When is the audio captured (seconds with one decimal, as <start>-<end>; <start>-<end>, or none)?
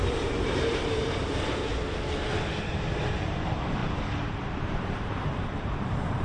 1.7-2.7